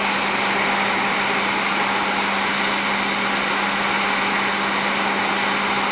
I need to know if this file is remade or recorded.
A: recorded